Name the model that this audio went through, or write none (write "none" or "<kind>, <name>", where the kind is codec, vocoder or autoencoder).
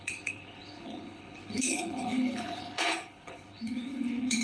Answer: codec, HILCodec